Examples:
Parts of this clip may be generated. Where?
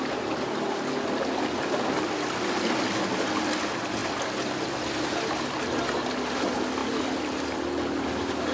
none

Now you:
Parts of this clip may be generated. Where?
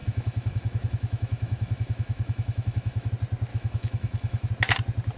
0.0-3.1; 3.5-4.5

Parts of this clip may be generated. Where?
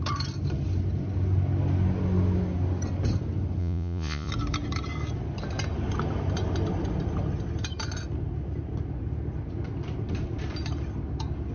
3.6-4.3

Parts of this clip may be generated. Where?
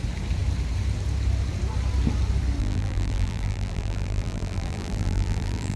2.6-5.8